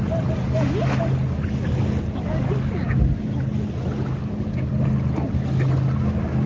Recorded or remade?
recorded